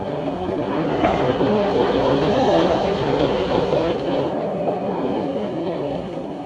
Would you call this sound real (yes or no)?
no